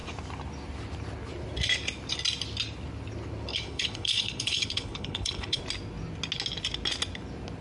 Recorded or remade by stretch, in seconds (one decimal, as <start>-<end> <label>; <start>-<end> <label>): 0.0-3.5 recorded; 3.5-5.6 remade; 5.6-7.6 recorded